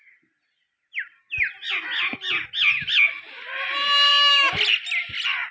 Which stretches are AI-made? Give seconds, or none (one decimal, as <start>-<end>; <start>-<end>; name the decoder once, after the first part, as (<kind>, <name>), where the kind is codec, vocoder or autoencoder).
none